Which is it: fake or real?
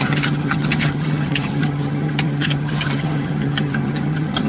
fake